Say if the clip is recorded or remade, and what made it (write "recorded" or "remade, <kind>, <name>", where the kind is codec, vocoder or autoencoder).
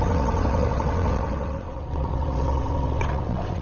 remade, vocoder, WaveNeXt